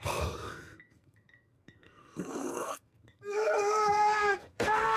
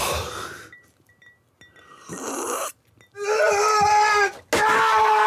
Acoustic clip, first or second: second